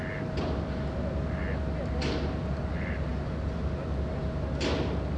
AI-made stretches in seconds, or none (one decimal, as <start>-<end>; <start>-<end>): none